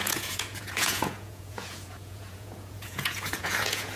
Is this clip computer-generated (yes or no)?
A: yes